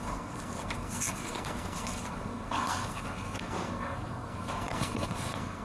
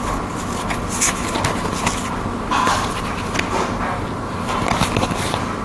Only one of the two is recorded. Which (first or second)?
second